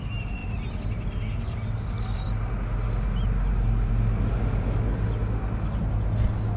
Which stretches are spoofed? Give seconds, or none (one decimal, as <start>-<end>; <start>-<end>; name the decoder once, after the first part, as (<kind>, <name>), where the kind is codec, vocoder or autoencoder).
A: none